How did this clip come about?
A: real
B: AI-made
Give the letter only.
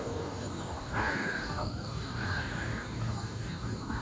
B